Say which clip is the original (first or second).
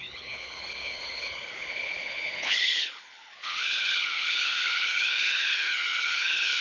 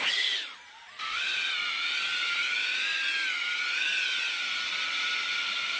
second